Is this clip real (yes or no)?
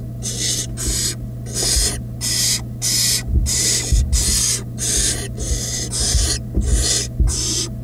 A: yes